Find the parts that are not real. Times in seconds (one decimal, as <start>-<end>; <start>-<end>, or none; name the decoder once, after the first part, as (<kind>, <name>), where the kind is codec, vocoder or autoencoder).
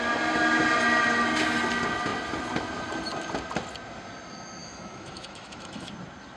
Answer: 4.6-5.9 (autoencoder, DAC-VAE)